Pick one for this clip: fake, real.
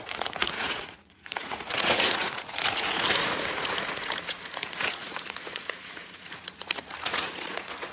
fake